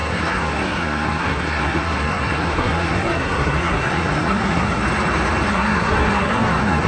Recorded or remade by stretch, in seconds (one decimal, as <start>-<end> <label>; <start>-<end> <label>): 0.0-4.8 remade; 4.8-5.5 recorded; 5.5-6.9 remade